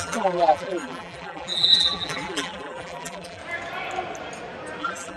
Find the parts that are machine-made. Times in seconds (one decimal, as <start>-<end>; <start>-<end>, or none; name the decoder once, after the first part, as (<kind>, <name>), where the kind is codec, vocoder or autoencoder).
0.0-3.4 (vocoder, BigVGAN v2); 4.8-5.2